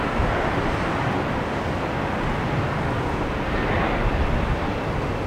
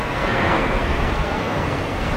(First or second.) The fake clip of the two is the second